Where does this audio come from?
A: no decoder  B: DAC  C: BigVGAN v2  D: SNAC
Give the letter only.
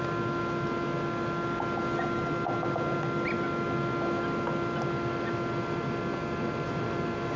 A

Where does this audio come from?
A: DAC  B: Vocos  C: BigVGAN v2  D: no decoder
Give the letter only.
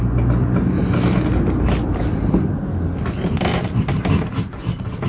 D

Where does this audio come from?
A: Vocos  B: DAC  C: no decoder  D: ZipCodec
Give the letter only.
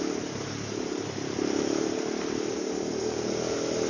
C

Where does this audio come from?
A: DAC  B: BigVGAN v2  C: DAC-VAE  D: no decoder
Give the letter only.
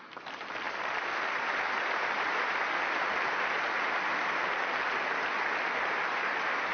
D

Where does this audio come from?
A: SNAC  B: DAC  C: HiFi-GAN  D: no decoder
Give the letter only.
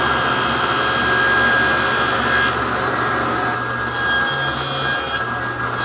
D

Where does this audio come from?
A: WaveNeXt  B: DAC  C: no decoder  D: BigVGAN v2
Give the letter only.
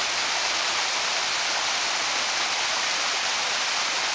C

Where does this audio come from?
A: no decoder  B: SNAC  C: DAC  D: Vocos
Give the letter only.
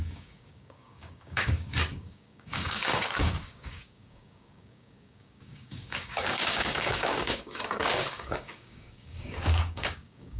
C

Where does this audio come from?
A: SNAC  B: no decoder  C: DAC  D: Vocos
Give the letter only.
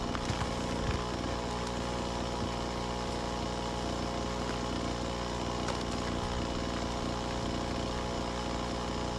B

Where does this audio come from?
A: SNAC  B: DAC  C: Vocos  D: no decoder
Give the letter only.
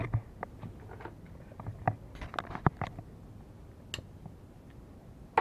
D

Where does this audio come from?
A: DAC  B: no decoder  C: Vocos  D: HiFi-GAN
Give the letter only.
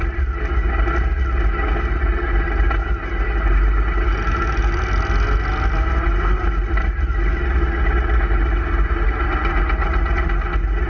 B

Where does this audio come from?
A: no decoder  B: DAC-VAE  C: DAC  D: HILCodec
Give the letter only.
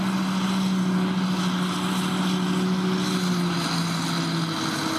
A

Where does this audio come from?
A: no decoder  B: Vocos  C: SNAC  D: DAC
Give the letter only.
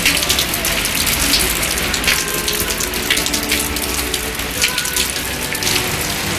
A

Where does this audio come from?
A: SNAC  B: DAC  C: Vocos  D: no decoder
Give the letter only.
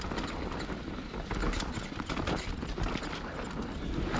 D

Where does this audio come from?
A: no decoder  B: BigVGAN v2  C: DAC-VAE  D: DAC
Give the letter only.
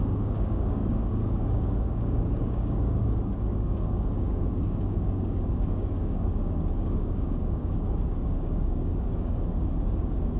D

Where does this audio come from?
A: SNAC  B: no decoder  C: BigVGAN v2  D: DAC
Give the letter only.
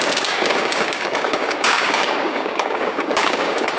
D